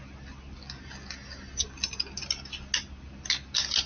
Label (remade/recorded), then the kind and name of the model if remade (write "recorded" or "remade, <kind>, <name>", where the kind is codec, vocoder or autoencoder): recorded